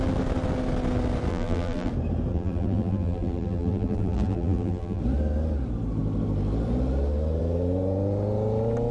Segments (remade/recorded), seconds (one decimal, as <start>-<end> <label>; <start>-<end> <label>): 0.0-1.3 recorded; 1.3-1.9 remade; 1.9-2.3 recorded; 2.3-5.0 remade; 5.0-8.9 recorded